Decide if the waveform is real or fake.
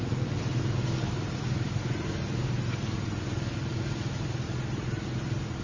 real